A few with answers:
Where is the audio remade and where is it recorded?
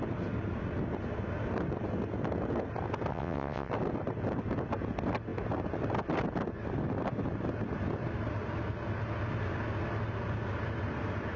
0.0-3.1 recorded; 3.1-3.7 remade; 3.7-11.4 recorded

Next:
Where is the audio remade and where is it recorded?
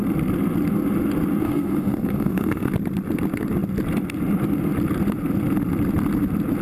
0.0-1.4 recorded; 1.4-2.7 remade; 2.7-6.6 recorded